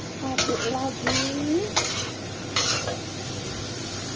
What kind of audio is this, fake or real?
real